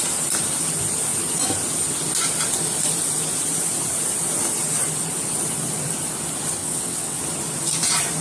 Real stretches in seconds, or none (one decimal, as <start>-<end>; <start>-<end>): 0.0-6.6; 7.2-8.2